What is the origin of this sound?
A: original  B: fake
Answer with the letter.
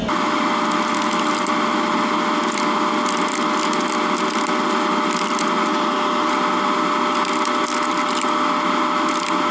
A